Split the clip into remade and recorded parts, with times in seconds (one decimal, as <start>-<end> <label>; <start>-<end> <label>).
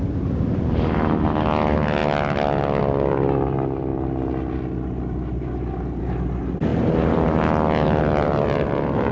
0.0-9.1 recorded